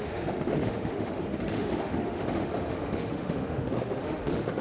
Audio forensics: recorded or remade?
remade